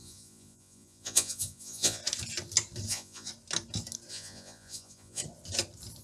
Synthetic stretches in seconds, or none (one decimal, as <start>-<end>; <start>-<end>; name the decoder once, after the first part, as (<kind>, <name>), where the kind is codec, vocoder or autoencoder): 0.0-2.0 (vocoder, Vocos); 2.9-3.3; 4.1-5.2